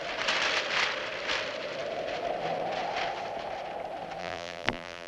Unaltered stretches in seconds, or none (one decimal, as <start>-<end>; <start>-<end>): 0.0-4.2